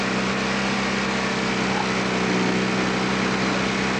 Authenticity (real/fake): real